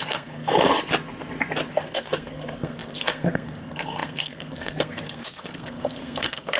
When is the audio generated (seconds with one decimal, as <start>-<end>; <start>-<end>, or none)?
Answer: 0.0-0.7; 1.7-6.6